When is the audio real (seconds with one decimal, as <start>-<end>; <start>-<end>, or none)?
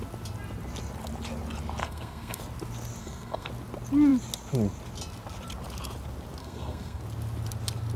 0.0-1.8; 2.4-3.0; 3.5-6.4; 7.0-8.0